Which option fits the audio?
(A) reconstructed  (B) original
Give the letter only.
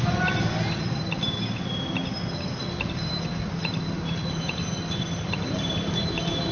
B